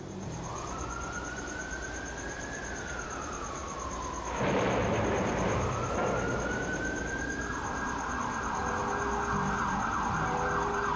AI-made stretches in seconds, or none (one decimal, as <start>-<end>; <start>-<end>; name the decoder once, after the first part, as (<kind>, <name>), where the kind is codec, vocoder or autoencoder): 0.5-1.4 (vocoder, Vocos)